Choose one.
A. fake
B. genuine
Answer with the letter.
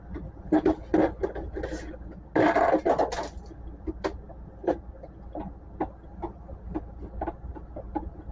B